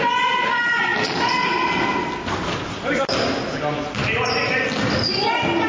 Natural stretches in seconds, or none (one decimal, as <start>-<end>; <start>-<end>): 0.0-5.7